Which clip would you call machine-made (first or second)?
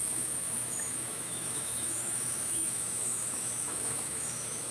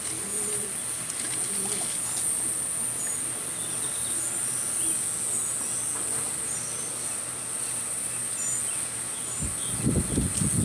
first